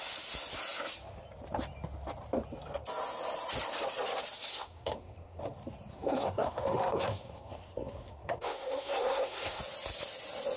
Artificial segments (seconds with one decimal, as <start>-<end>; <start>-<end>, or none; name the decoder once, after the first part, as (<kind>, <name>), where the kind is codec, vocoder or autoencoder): 4.5-5.4 (codec, SNAC); 5.9-9.6